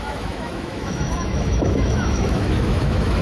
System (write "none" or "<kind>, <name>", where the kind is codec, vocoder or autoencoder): autoencoder, DAC-VAE